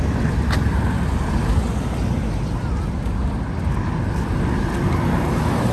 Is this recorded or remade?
recorded